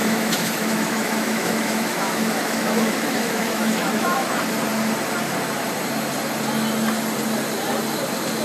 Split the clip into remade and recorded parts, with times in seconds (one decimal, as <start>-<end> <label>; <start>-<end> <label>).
0.0-4.3 remade; 4.3-8.4 recorded